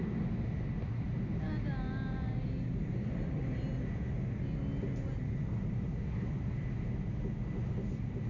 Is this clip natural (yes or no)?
yes